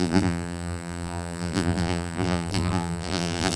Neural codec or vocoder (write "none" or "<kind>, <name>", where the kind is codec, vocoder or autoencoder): vocoder, BigVGAN v2